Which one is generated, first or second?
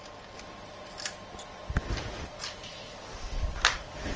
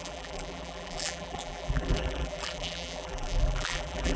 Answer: second